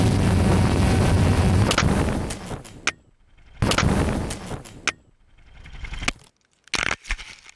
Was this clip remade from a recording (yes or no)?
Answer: no